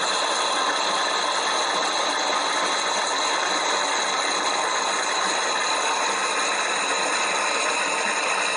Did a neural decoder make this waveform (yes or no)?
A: no